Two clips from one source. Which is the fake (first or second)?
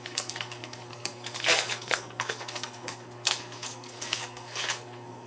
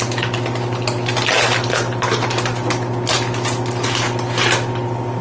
first